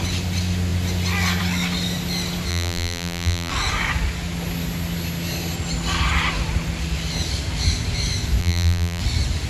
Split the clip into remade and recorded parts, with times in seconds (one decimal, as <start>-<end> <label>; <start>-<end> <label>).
0.0-2.5 recorded; 2.5-3.5 remade; 3.5-8.4 recorded; 8.4-9.0 remade; 9.0-9.5 recorded